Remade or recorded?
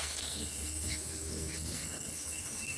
remade